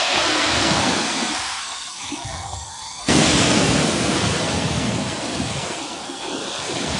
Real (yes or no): no